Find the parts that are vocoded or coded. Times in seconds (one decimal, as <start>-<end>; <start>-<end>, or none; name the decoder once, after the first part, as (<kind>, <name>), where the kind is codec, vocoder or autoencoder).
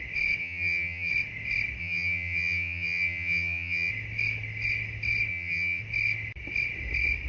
0.4-1.1 (vocoder, HiFi-GAN); 1.8-3.9; 5.3-5.8